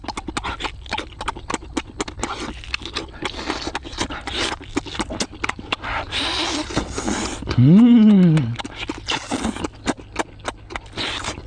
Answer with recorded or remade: recorded